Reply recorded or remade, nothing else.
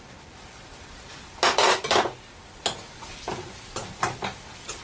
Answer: recorded